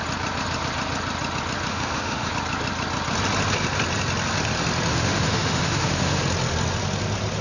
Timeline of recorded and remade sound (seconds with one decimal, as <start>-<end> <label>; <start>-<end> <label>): 0.0-1.7 recorded; 1.7-2.3 remade; 2.3-4.9 recorded; 4.9-6.2 remade; 6.2-7.4 recorded

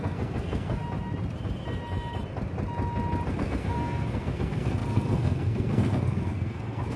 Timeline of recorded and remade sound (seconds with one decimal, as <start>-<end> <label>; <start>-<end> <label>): 0.0-0.8 remade; 0.8-3.3 recorded; 3.3-7.0 remade